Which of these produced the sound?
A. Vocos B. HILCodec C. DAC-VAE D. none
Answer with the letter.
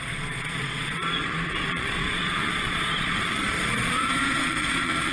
A